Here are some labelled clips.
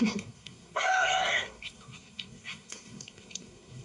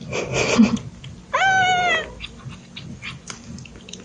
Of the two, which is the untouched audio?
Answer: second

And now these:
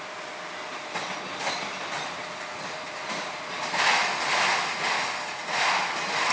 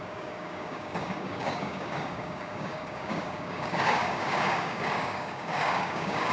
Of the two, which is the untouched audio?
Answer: first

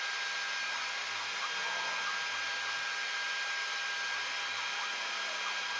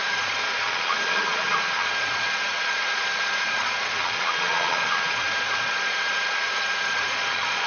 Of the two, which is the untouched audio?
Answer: first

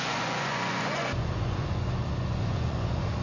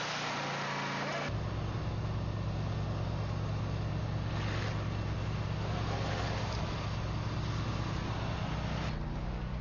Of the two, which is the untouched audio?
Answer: second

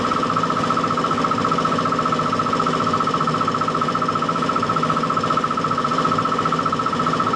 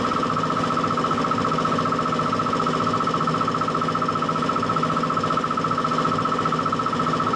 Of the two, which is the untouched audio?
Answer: second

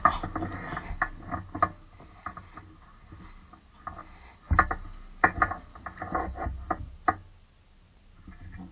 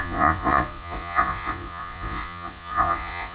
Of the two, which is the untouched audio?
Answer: first